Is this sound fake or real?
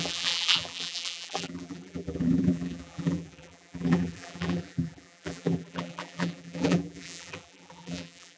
fake